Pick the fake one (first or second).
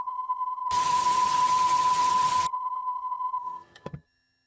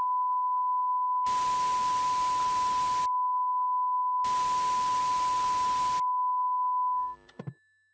first